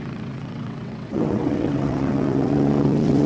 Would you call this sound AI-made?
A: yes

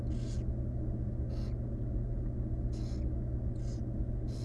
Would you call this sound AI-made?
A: no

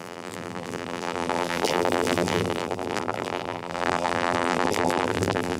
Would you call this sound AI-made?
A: yes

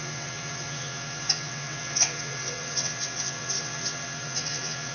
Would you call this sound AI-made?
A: yes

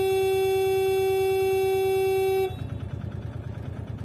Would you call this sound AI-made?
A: no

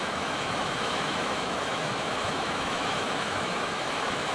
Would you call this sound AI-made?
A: yes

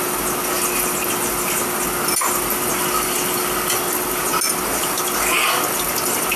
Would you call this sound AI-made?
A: no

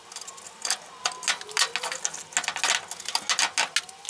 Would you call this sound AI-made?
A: no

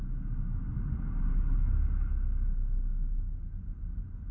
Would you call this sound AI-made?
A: no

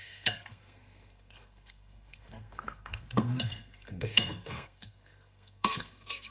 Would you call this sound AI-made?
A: yes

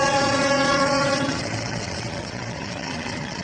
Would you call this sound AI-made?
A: yes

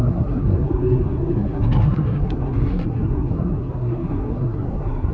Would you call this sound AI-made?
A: yes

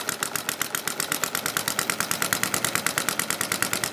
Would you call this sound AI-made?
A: no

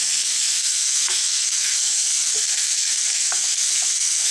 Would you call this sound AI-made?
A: yes